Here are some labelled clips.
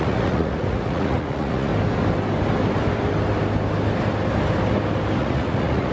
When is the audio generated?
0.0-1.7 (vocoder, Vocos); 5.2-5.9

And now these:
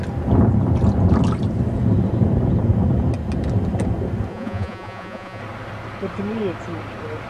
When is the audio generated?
4.3-5.4 (vocoder, Vocos)

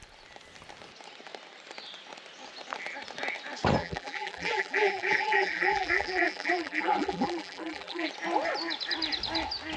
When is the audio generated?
3.8-8.1 (vocoder, BigVGAN v2)

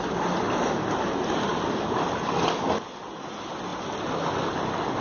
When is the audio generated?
none